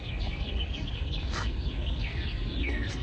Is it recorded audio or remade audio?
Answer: remade